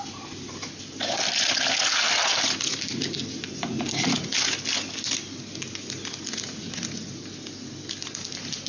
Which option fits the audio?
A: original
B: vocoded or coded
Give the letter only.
A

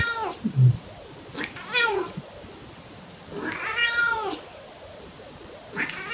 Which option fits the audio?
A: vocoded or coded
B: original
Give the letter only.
B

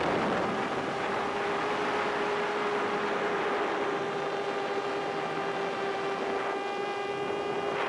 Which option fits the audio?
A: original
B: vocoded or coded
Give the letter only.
A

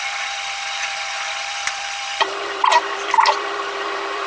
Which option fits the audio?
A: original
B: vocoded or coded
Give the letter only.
B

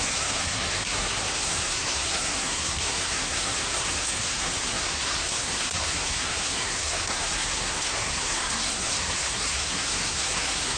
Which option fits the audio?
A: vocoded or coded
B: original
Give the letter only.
A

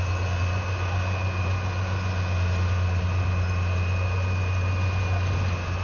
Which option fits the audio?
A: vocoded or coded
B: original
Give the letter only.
B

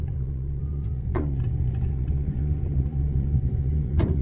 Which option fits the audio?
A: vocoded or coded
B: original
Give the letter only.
A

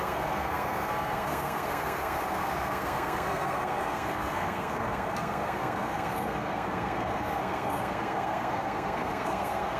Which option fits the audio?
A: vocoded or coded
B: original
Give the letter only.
A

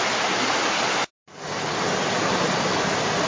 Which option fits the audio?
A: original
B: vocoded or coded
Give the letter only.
A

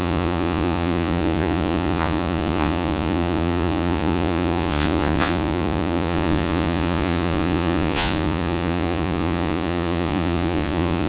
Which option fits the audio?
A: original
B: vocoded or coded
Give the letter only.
B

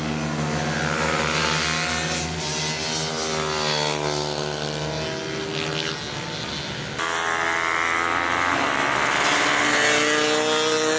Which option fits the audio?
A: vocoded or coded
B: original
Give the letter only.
B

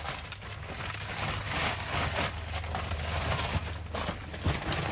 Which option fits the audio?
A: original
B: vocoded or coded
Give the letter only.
A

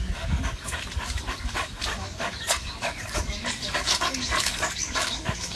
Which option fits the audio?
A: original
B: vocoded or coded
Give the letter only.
B